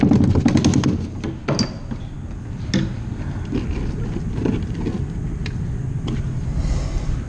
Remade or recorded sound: recorded